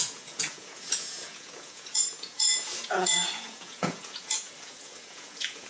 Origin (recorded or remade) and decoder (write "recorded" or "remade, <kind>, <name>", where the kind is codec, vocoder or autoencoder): remade, vocoder, Vocos